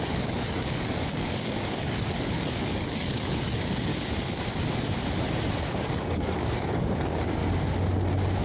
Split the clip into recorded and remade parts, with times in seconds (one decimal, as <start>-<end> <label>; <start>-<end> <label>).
0.0-3.9 remade; 3.9-5.8 recorded; 5.8-7.4 remade; 7.4-8.4 recorded